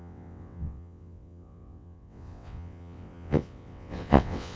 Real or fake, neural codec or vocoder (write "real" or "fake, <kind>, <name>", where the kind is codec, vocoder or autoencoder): fake, vocoder, WaveNeXt